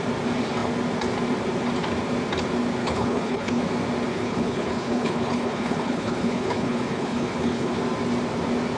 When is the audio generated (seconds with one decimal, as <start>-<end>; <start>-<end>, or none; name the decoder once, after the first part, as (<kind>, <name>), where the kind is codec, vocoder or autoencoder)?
2.8-3.6 (codec, HILCodec); 4.1-7.8